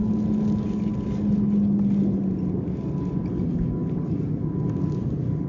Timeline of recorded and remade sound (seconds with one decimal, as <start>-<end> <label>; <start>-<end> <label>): 0.0-5.5 recorded